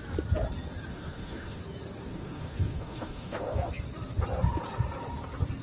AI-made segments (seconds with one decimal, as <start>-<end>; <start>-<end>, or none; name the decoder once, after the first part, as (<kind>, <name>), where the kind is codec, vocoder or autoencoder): 0.9-1.6 (autoencoder, DAC-VAE); 2.1-3.7